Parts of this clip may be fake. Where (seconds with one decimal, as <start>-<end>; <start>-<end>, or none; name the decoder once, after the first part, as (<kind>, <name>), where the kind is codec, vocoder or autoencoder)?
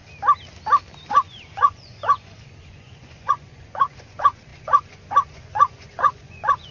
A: 1.1-6.7 (vocoder, Vocos)